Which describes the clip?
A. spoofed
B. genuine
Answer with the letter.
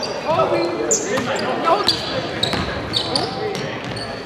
B